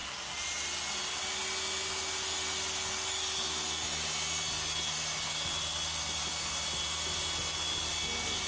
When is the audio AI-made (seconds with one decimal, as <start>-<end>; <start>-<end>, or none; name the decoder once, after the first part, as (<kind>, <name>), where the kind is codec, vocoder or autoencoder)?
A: none